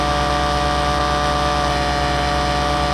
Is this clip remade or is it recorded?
recorded